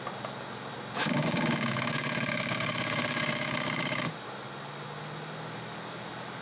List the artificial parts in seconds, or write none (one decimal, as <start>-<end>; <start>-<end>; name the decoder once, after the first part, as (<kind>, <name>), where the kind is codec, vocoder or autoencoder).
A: 1.0-4.1 (codec, DAC)